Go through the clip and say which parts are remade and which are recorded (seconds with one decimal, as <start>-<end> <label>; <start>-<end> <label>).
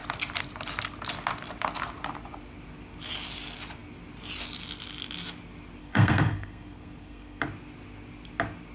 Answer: 0.0-5.8 recorded; 5.8-7.4 remade; 7.4-8.7 recorded